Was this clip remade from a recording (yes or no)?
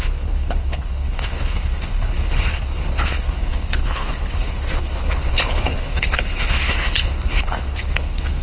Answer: yes